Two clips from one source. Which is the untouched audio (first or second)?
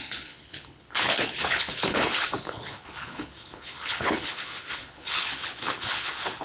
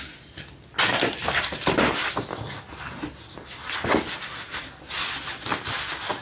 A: second